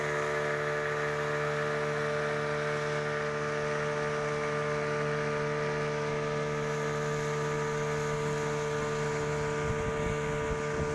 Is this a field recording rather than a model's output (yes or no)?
yes